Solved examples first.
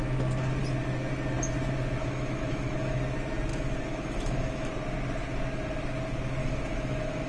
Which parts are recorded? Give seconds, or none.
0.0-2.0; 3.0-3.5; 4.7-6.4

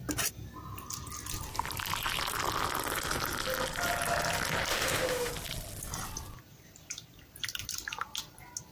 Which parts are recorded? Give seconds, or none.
0.0-4.7; 5.3-8.7

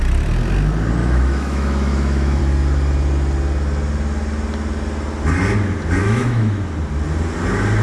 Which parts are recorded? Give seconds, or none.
0.0-1.0; 2.4-6.0; 6.6-7.8